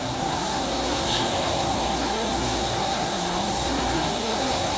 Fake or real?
fake